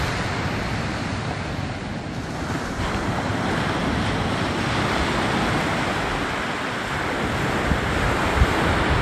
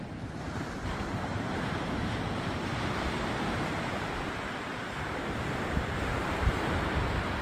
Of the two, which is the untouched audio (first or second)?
first